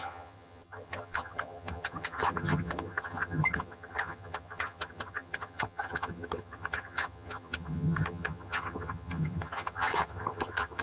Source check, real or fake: fake